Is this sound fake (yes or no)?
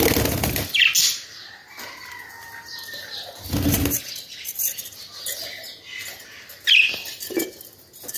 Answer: no